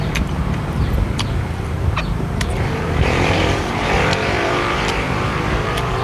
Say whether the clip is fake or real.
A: fake